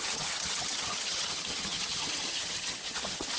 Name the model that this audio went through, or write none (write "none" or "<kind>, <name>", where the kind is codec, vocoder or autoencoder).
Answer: vocoder, HiFi-GAN